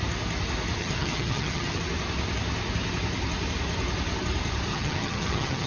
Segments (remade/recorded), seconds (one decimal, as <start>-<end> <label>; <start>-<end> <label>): 0.0-0.8 recorded; 0.8-1.8 remade; 1.8-4.7 recorded; 4.7-5.7 remade